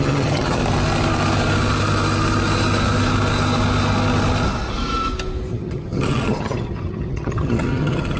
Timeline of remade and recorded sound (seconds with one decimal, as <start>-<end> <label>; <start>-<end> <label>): 0.0-0.6 remade; 0.6-5.5 recorded; 5.5-8.2 remade